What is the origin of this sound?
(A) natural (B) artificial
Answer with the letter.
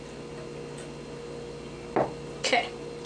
A